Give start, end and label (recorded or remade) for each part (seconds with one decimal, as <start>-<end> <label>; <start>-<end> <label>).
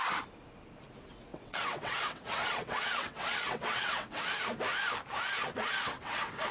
0.0-1.3 recorded; 1.3-4.2 remade; 4.2-5.4 recorded; 5.4-6.5 remade